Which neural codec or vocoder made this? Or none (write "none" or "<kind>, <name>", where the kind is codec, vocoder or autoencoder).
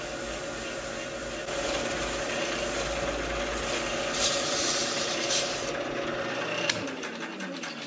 none